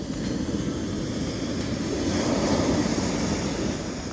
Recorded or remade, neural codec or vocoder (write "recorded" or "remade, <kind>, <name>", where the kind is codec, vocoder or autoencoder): recorded